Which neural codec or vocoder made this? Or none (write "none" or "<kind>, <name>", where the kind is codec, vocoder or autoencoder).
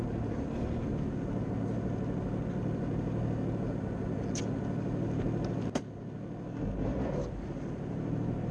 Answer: none